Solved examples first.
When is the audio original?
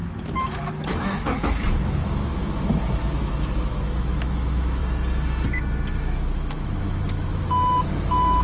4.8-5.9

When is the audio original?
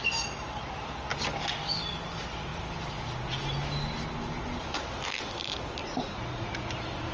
0.0-5.8; 6.5-7.1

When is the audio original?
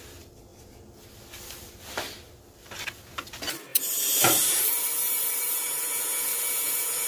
0.0-3.7; 4.4-5.0; 5.8-7.1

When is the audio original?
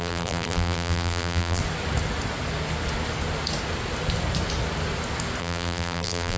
1.6-5.4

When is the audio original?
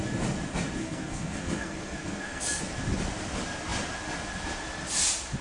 0.0-0.8; 2.6-5.4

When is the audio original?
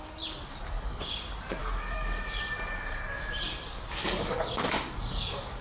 0.0-0.5; 1.0-1.6; 2.4-4.0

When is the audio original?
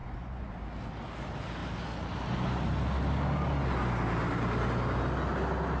0.5-5.8